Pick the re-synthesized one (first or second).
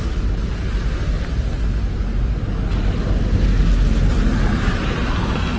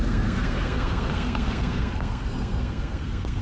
second